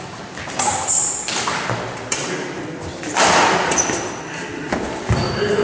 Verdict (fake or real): real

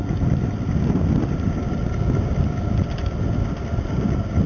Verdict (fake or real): real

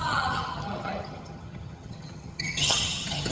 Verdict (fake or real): fake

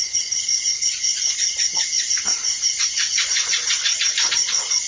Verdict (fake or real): real